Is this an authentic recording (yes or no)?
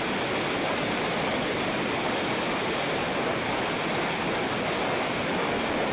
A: yes